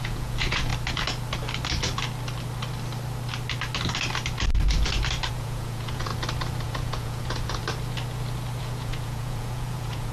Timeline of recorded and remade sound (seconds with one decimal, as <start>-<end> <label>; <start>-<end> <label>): 0.0-0.7 remade; 0.7-5.3 recorded; 5.3-6.1 remade; 6.1-6.6 recorded; 6.6-7.6 remade; 7.6-8.6 recorded; 8.6-10.1 remade